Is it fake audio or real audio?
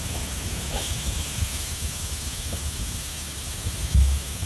fake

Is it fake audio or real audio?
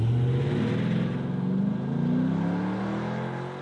real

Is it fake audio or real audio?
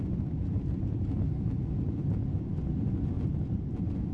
real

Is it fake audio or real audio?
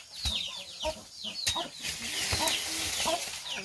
real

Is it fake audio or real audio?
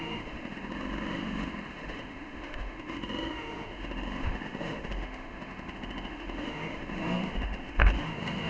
fake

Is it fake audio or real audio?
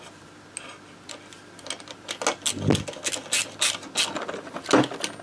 real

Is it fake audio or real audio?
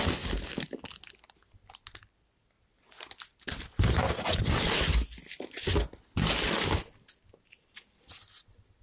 real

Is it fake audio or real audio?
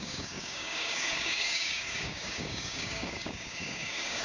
fake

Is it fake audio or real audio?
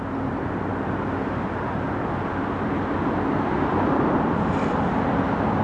real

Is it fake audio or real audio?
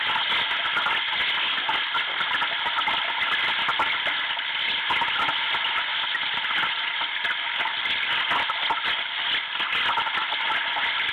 real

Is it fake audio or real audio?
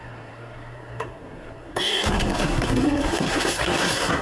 fake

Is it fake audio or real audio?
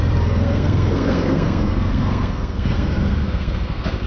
fake